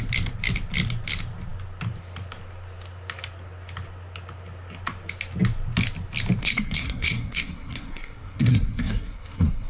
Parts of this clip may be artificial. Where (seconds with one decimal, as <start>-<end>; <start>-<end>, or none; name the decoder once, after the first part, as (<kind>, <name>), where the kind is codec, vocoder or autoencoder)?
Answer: 6.4-9.7 (codec, SNAC)